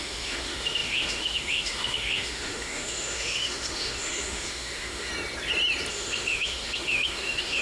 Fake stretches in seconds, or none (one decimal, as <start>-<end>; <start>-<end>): 0.0-5.1; 5.9-7.6